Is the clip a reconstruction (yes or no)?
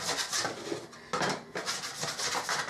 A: no